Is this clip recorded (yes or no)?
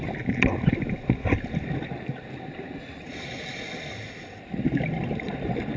yes